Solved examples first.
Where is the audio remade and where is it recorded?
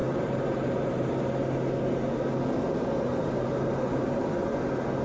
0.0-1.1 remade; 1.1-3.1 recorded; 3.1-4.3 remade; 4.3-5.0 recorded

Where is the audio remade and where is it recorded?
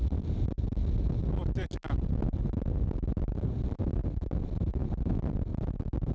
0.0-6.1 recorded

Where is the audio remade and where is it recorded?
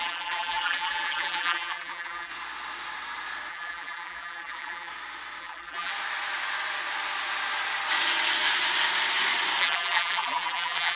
0.0-2.3 remade; 2.3-3.5 recorded; 3.5-4.9 remade; 4.9-5.4 recorded; 5.4-5.9 remade; 5.9-9.6 recorded; 9.6-11.0 remade